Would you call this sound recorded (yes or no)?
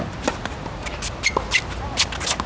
yes